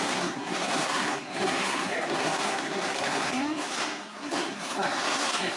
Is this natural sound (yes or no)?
no